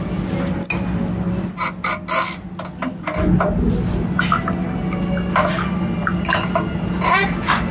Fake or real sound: real